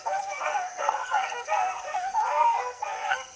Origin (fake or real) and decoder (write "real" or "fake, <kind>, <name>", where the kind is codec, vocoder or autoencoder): fake, codec, SNAC